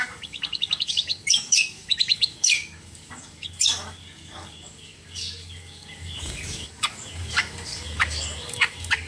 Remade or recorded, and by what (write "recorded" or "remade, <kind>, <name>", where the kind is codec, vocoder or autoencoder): remade, codec, DAC